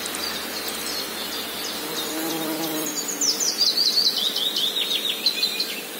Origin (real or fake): real